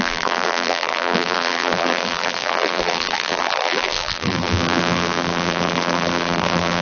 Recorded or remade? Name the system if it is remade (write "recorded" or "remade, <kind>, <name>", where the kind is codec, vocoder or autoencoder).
remade, vocoder, BigVGAN v2